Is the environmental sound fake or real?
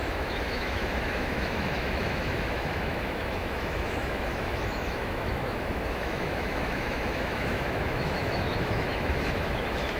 fake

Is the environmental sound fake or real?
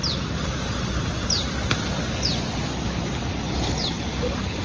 real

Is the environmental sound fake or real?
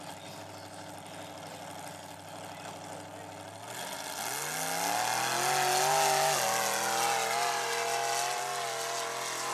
real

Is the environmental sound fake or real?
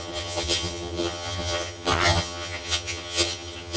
fake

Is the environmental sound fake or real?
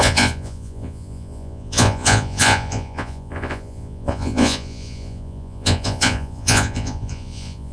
fake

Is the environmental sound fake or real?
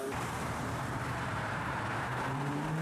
fake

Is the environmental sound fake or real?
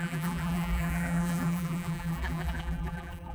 fake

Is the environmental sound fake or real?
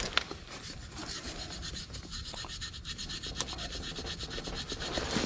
real